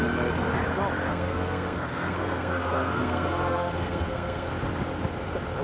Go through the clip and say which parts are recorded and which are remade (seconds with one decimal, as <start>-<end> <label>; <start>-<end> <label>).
0.0-1.1 recorded; 1.1-4.5 remade; 4.5-5.6 recorded